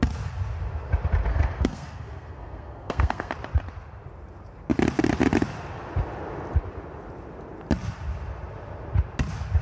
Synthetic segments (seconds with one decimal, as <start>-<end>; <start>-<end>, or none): 1.3-3.3